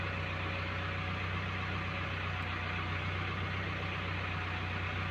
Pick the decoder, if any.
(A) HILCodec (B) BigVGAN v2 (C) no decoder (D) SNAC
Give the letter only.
C